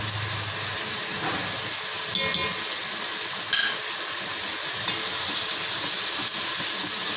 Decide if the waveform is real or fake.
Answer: real